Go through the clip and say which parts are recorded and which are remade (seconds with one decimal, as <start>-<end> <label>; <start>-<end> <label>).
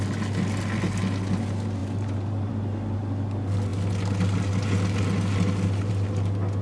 0.0-1.8 recorded; 1.8-2.5 remade; 2.5-6.6 recorded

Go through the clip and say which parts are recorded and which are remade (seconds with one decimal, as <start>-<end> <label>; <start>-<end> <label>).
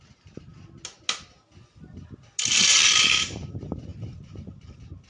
0.0-0.5 remade; 0.5-3.0 recorded; 3.0-5.1 remade